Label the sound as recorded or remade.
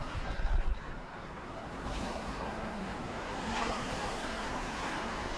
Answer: remade